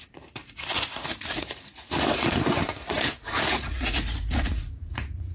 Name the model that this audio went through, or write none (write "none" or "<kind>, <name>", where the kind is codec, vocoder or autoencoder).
vocoder, Vocos